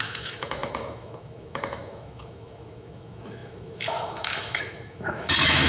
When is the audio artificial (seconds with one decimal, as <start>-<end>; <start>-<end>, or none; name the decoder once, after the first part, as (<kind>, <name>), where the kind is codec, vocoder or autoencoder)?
0.0-5.7 (autoencoder, DAC-VAE)